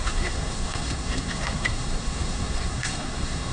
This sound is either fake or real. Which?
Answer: fake